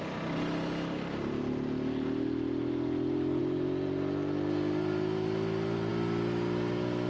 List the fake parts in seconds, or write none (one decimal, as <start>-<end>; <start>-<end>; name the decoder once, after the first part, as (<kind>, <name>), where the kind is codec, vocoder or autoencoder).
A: none